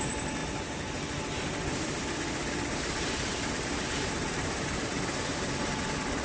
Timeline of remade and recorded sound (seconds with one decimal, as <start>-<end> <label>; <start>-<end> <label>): 0.0-6.2 recorded